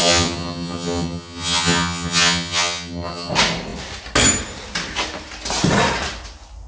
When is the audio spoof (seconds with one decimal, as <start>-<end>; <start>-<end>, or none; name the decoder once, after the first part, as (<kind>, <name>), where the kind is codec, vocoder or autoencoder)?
0.0-3.3 (vocoder, HiFi-GAN)